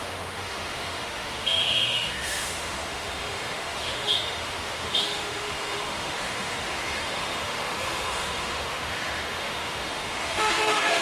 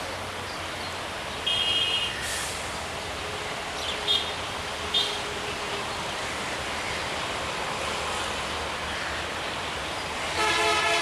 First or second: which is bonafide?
second